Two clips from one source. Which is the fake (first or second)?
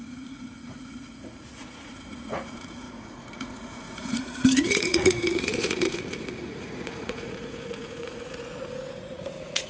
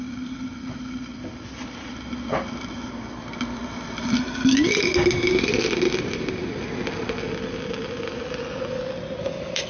first